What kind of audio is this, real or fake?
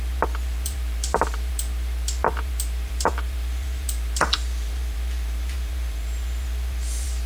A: fake